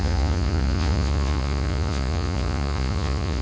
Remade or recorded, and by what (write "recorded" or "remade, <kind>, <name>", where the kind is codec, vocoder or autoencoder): remade, vocoder, Vocos